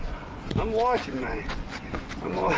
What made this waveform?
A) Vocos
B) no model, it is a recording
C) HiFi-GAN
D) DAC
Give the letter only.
A